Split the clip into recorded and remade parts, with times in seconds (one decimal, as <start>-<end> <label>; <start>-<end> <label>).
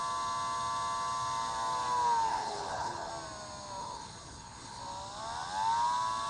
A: 0.0-2.3 recorded; 2.3-3.1 remade; 3.1-3.8 recorded; 3.8-4.8 remade; 4.8-6.3 recorded